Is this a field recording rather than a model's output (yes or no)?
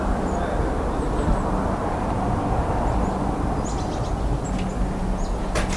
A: yes